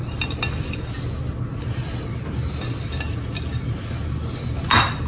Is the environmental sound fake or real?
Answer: real